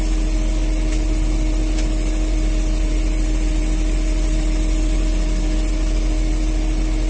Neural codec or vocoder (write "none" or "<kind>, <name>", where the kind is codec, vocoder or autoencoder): none